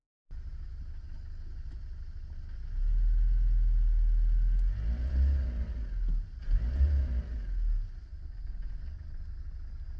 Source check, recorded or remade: recorded